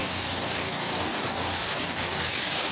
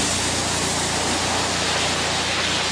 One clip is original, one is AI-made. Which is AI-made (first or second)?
first